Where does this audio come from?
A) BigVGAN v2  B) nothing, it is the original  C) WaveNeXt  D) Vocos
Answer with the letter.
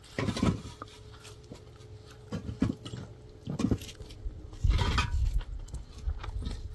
B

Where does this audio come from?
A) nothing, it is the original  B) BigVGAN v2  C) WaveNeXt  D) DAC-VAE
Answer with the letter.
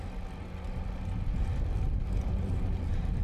A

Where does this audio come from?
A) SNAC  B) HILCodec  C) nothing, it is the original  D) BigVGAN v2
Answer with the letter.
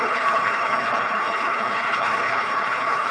B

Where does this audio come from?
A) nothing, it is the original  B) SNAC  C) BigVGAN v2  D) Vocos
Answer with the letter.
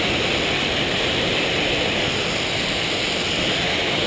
A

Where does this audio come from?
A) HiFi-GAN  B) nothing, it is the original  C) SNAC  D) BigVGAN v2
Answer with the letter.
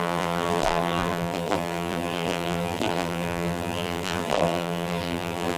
D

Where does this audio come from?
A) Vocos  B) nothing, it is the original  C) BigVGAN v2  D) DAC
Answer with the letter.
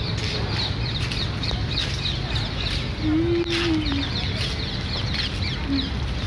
B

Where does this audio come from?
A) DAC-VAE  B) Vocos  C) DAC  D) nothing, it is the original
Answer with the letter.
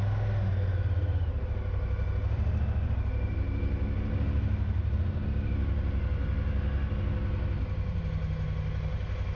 D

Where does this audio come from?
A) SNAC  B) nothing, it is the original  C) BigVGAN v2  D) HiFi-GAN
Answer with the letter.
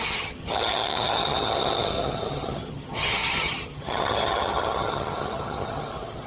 D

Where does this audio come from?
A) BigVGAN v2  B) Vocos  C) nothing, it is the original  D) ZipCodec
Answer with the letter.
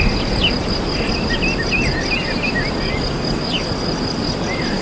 C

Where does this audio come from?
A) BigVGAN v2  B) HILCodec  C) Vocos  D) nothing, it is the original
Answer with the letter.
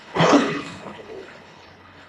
B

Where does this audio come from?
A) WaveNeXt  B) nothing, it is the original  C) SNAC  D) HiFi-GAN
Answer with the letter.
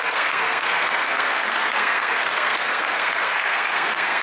C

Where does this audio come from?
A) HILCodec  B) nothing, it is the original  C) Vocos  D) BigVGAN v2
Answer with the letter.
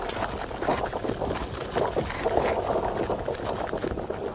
B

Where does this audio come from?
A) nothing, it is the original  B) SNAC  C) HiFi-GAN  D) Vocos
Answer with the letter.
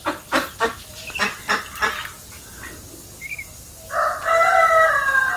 A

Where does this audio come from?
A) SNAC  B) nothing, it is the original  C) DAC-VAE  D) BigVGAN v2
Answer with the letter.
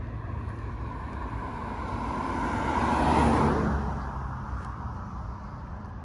B